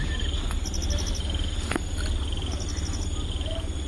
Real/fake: real